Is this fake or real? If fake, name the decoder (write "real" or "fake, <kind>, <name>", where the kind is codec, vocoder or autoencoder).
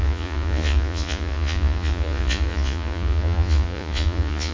fake, vocoder, Vocos